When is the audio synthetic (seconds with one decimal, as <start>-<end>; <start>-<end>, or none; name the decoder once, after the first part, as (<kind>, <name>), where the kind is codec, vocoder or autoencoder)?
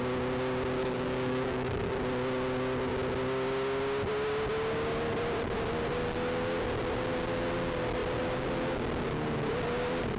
0.8-2.0 (codec, DAC)